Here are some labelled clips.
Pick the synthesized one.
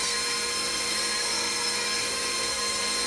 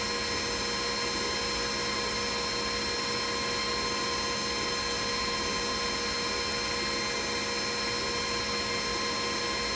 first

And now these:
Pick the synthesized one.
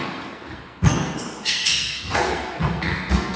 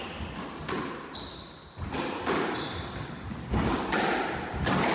first